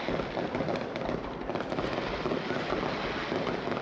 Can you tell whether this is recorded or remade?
recorded